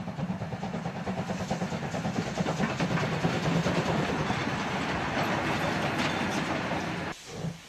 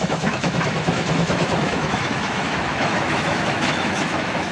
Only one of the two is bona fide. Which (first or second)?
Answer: first